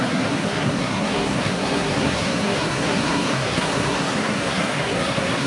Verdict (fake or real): fake